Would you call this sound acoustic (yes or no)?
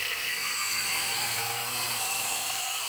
no